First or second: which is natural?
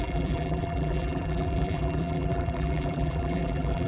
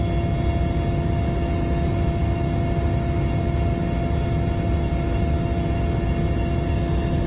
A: second